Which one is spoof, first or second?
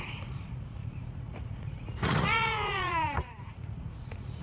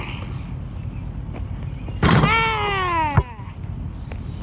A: first